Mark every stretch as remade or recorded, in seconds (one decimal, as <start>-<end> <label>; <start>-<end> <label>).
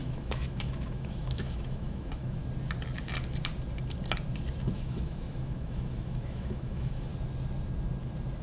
0.0-2.4 remade; 2.4-4.7 recorded; 4.7-7.1 remade; 7.1-8.4 recorded